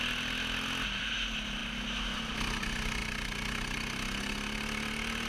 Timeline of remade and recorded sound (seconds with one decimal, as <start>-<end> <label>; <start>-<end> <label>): 0.0-5.3 recorded

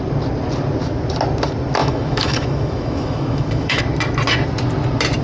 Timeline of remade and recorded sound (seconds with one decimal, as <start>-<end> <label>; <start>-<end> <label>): 0.0-1.8 recorded; 1.8-3.8 remade; 3.8-5.2 recorded

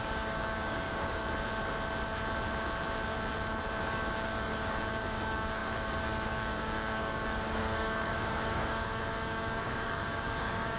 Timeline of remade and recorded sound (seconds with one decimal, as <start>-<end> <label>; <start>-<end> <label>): 0.0-1.2 remade; 1.2-3.8 recorded; 3.8-10.8 remade

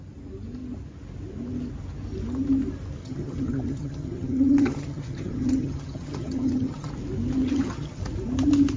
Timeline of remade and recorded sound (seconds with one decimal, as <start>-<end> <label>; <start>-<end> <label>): 0.0-3.0 recorded; 3.0-6.9 remade; 6.9-7.4 recorded; 7.4-8.0 remade; 8.0-8.8 recorded

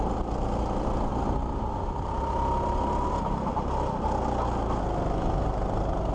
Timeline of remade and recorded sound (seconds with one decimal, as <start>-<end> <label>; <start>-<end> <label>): 0.0-6.1 recorded